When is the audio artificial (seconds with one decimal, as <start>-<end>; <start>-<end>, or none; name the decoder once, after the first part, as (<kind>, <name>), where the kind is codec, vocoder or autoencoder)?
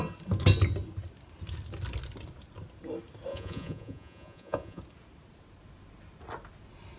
3.3-4.8 (vocoder, Vocos)